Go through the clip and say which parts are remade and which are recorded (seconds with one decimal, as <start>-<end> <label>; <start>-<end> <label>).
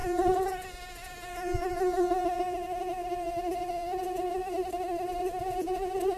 0.0-4.4 remade; 4.4-5.2 recorded; 5.2-6.2 remade